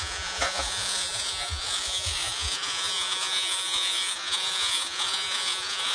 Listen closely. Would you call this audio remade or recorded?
remade